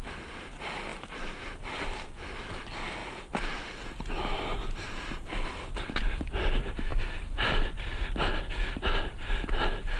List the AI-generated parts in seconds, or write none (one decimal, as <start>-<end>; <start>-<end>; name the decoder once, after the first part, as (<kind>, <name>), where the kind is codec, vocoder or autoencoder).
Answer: 3.0-6.3 (vocoder, BigVGAN v2)